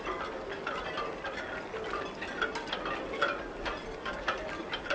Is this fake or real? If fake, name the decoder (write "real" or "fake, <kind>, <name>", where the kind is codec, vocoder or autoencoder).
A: real